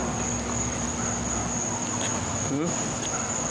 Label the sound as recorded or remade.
recorded